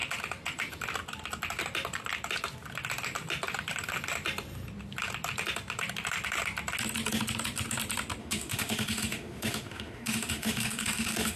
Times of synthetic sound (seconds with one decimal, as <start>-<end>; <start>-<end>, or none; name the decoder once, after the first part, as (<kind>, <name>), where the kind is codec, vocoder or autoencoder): 8.2-11.4 (autoencoder, DAC-VAE)